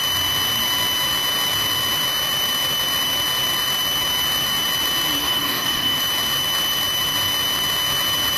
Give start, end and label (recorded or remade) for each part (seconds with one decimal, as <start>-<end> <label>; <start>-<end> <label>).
0.0-5.2 recorded; 5.2-6.0 remade; 6.0-8.4 recorded